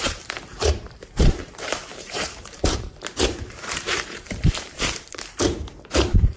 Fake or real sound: fake